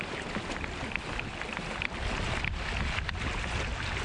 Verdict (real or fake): real